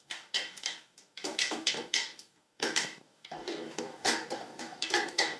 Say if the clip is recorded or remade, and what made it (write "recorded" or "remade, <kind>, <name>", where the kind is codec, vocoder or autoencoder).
remade, codec, DAC